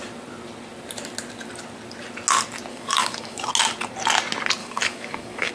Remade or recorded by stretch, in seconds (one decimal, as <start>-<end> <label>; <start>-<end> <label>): 0.0-2.7 recorded; 2.7-3.5 remade; 3.5-4.6 recorded; 4.6-5.5 remade